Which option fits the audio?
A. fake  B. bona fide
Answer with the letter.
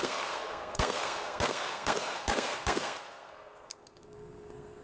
A